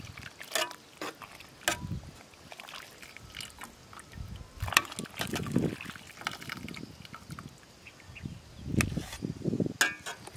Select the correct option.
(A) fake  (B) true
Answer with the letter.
B